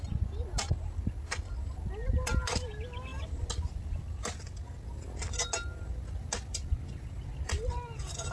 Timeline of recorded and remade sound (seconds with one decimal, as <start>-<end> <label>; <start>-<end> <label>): 0.0-8.3 recorded